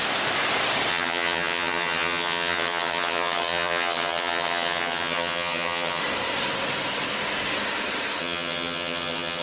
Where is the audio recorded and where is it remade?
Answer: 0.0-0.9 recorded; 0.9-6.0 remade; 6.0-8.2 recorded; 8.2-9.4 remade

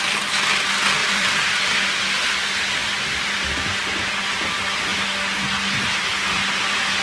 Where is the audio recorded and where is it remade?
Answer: 0.0-1.0 recorded; 1.0-1.6 remade; 1.6-2.8 recorded; 2.8-3.5 remade; 3.5-7.0 recorded

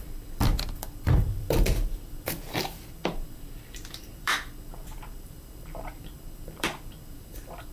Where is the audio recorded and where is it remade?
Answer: 0.0-7.7 remade

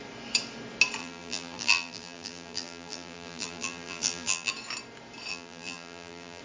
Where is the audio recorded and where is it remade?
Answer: 0.0-1.0 recorded; 1.0-4.5 remade; 4.5-5.3 recorded; 5.3-6.4 remade

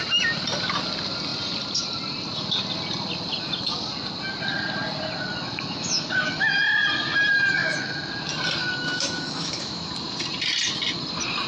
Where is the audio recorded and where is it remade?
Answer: 0.0-5.3 recorded; 5.3-6.6 remade; 6.6-7.6 recorded; 7.6-8.1 remade; 8.1-8.6 recorded; 8.6-9.9 remade; 9.9-11.5 recorded

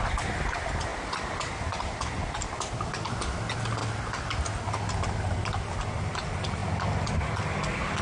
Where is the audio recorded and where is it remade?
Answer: 0.0-8.0 recorded

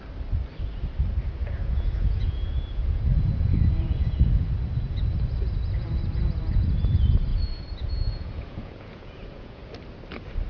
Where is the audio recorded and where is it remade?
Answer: 0.0-1.4 recorded; 1.4-4.2 remade; 4.2-7.3 recorded; 7.3-9.7 remade; 9.7-10.5 recorded